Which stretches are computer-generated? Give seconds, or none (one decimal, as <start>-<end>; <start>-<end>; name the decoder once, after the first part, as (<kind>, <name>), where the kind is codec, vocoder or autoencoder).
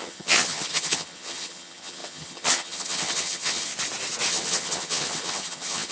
0.0-3.7 (vocoder, HiFi-GAN); 4.3-5.9